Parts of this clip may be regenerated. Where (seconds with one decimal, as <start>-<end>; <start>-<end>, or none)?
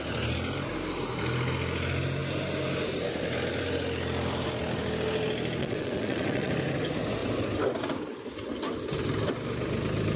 5.6-6.5